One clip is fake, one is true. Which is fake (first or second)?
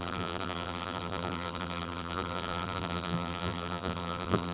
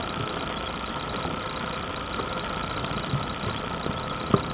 first